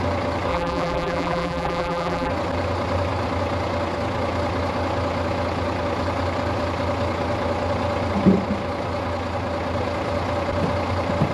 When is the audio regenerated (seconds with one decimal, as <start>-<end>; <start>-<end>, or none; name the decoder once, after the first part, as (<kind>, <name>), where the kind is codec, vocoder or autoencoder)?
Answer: 0.5-2.3 (vocoder, BigVGAN v2)